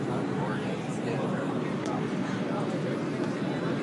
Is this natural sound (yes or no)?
yes